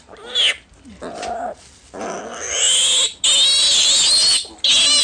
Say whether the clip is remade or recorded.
recorded